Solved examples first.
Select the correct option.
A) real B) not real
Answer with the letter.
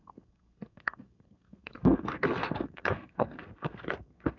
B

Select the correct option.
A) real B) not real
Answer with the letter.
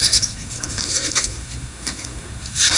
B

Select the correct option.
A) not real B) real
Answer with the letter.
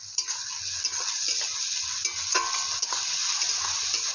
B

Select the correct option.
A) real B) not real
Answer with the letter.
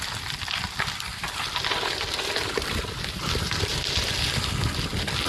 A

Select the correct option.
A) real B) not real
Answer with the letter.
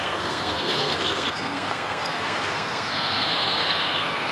B